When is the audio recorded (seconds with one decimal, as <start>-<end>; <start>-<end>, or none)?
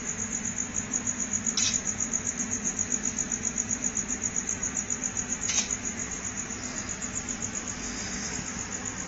0.0-7.8; 8.3-9.1